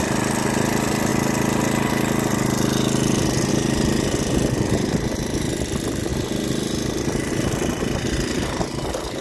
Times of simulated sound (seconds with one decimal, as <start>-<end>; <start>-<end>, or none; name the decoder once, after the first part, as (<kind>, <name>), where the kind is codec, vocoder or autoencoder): none